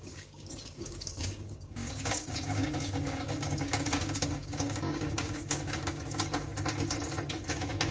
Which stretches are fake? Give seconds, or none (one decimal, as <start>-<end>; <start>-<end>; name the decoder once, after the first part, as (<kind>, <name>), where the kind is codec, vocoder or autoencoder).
0.0-6.5 (codec, DAC); 7.5-7.9